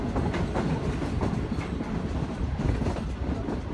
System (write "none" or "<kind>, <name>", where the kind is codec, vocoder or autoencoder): none